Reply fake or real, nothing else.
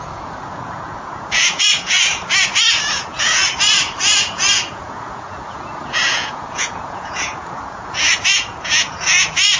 fake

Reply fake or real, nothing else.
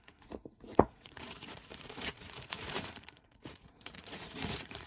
fake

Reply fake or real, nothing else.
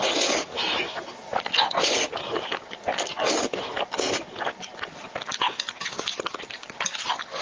real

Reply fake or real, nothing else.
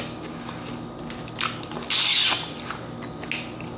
real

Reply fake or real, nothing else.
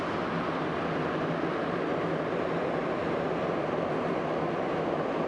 real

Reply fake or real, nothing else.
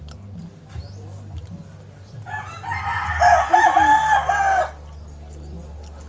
real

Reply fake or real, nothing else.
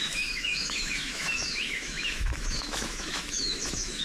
fake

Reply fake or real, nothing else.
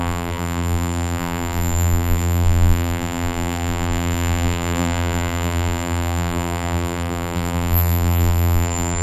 fake